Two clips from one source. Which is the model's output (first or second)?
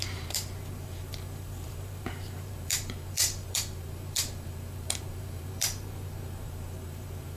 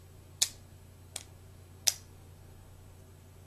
first